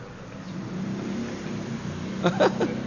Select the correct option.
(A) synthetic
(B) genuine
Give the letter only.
B